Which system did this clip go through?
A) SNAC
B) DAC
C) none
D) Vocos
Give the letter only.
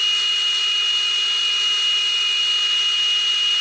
C